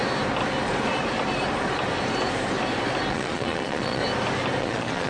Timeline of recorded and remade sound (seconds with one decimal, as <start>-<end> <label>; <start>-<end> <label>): 0.0-3.1 recorded; 3.1-4.0 remade; 4.0-4.6 recorded; 4.6-5.1 remade